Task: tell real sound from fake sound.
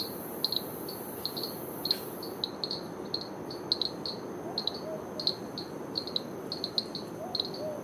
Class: real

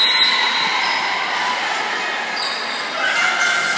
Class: real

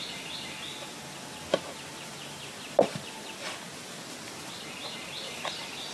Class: real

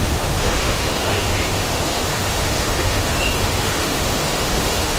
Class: fake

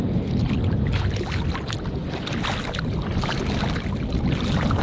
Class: real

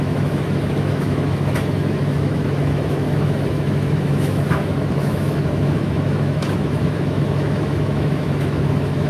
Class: fake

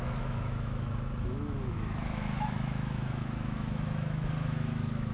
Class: fake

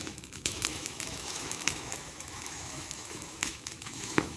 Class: fake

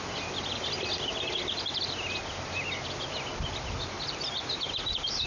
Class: real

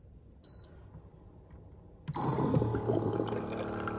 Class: real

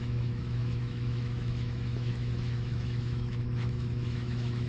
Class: fake